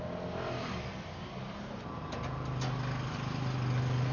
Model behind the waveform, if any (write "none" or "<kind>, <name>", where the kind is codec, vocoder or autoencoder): none